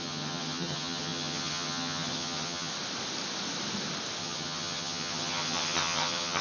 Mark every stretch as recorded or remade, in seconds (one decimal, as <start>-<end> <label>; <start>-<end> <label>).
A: 0.0-2.7 remade; 2.7-4.2 recorded; 4.2-6.4 remade